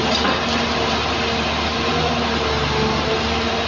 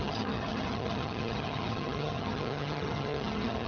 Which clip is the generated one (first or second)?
second